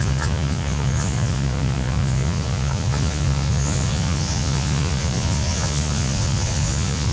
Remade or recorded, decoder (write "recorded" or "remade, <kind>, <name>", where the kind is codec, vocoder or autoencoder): remade, vocoder, Vocos